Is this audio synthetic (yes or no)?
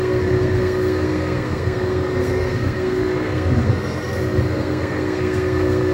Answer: yes